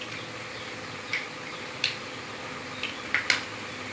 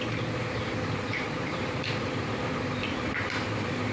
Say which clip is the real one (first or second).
first